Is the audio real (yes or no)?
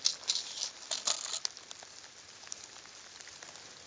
yes